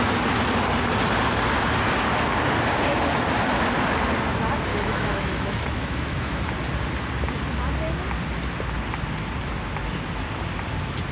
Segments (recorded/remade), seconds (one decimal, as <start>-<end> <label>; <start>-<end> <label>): 0.0-4.7 recorded; 4.7-6.5 remade; 6.5-11.1 recorded